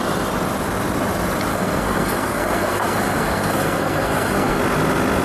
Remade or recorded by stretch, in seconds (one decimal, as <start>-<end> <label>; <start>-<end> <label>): 0.0-1.5 recorded; 1.5-4.6 remade; 4.6-5.2 recorded

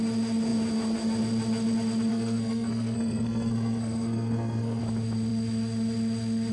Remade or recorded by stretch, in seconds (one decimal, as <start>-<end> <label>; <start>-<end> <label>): 0.0-2.1 recorded; 2.1-4.8 remade; 4.8-6.5 recorded

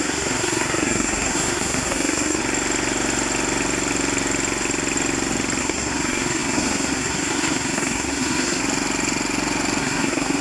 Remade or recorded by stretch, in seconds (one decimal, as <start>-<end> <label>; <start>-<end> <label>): 0.0-2.4 remade; 2.4-5.6 recorded; 5.6-8.6 remade; 8.6-9.8 recorded; 9.8-10.4 remade

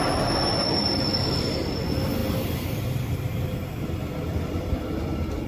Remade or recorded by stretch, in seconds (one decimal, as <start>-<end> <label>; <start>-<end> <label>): 0.0-5.5 recorded

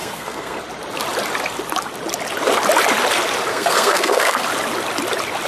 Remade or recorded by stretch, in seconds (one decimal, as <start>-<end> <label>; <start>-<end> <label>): 0.0-0.6 remade; 0.6-3.5 recorded; 3.5-4.4 remade; 4.4-5.5 recorded

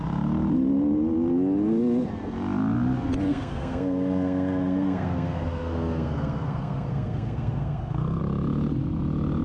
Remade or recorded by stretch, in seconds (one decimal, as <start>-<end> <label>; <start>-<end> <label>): 0.0-3.3 recorded; 3.3-8.2 remade; 8.2-9.4 recorded

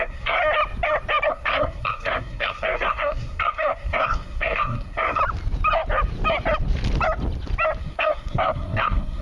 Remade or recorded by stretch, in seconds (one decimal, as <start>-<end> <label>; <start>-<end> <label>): 0.0-0.4 remade; 0.4-1.3 recorded; 1.3-5.2 remade; 5.2-7.8 recorded; 7.8-9.2 remade

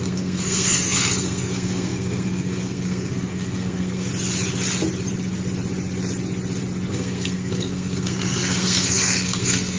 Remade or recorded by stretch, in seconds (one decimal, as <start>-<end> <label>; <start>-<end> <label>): 0.0-4.1 remade; 4.1-6.9 recorded; 6.9-9.8 remade